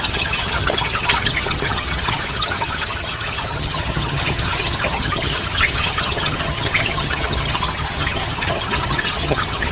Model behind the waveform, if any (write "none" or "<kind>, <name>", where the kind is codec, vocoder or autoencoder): vocoder, HiFi-GAN